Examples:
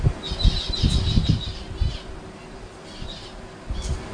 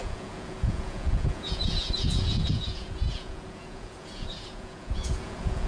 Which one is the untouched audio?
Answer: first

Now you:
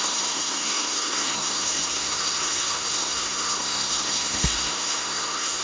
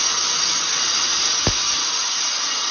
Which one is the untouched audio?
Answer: second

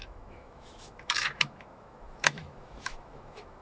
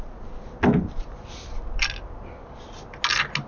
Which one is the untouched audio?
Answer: second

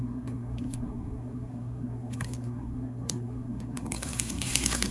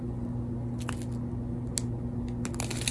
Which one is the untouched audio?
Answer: second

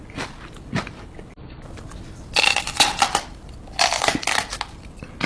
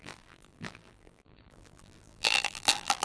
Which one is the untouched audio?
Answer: first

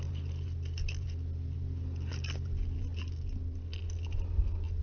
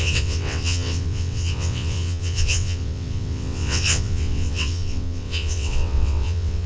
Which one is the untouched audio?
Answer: first